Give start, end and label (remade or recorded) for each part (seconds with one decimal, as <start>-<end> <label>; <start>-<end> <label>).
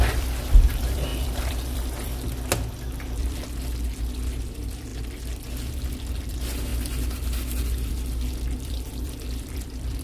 0.0-2.1 remade; 2.1-3.2 recorded; 3.2-4.9 remade; 4.9-6.3 recorded; 6.3-6.7 remade; 6.7-7.6 recorded; 7.6-10.0 remade